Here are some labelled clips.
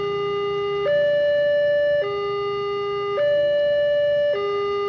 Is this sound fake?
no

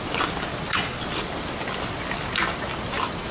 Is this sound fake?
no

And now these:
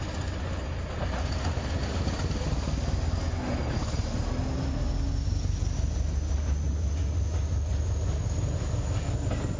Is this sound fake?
no